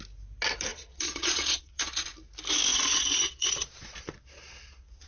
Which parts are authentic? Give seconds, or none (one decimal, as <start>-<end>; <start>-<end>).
0.0-0.7; 2.1-2.7